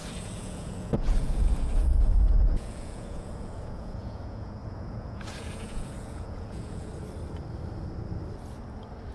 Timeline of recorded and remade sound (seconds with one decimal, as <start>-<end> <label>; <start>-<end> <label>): 0.0-6.9 remade; 6.9-9.1 recorded